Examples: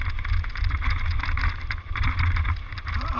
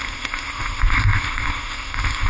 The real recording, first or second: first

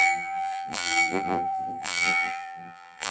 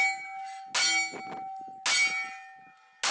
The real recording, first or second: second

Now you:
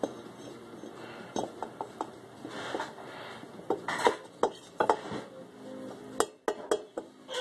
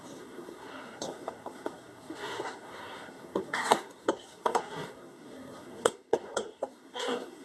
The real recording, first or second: first